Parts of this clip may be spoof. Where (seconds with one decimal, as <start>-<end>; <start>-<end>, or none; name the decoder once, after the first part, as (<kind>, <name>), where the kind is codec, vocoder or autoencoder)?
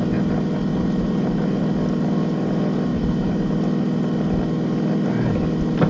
0.7-1.6 (vocoder, BigVGAN v2); 2.9-3.5